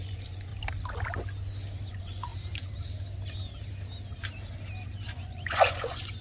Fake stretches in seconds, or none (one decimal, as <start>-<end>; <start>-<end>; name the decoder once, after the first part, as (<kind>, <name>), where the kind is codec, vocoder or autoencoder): 0.0-0.5 (vocoder, Vocos); 1.9-2.3; 5.1-6.2